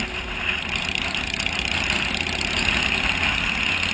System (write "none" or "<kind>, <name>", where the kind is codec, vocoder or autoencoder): none